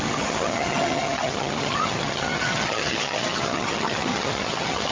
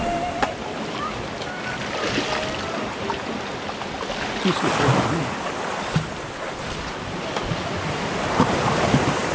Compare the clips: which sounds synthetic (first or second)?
first